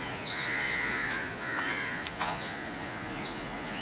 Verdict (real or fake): fake